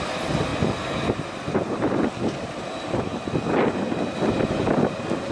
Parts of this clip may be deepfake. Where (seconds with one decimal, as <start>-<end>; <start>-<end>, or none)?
none